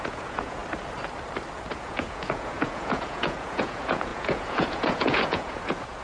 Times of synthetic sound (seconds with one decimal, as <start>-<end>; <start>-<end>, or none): 0.0-0.6; 1.7-6.0